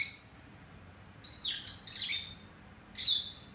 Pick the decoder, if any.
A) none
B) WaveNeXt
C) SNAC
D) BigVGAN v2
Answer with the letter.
A